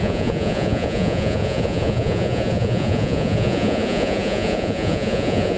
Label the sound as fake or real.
fake